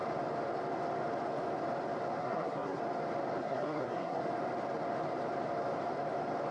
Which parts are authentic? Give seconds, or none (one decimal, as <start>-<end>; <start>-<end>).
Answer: 0.0-2.2; 2.8-3.4; 4.2-6.5